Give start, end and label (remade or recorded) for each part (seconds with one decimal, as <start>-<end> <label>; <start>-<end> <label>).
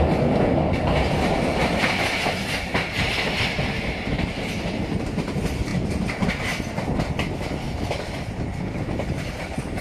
0.0-9.8 recorded